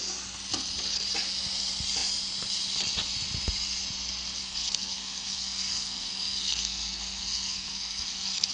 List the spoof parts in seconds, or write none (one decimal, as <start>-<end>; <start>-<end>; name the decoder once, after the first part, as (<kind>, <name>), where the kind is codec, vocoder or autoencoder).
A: 4.4-8.5 (codec, SNAC)